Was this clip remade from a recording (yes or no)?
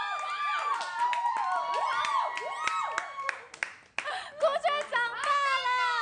no